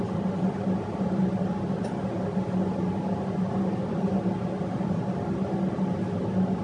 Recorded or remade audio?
recorded